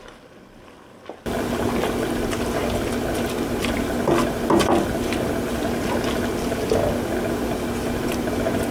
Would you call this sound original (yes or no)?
yes